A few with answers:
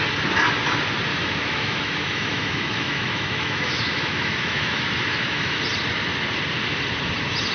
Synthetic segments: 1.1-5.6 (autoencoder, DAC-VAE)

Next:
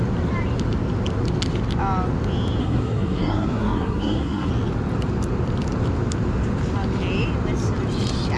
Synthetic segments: 2.6-4.5 (codec, SNAC)

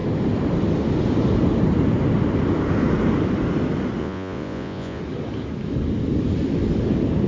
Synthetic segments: 4.0-5.0 (vocoder, Vocos)

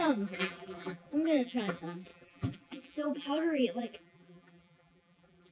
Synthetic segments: 0.0-5.5 (vocoder, BigVGAN v2)

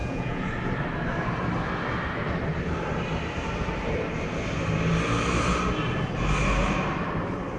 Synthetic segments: 0.0-0.5 (vocoder, Vocos)